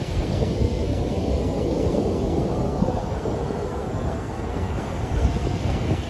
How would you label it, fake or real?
fake